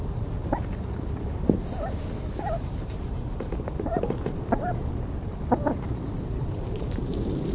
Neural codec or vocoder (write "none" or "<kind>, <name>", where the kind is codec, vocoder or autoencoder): vocoder, BigVGAN v2